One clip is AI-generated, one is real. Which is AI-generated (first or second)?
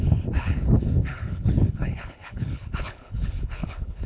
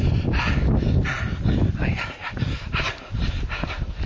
first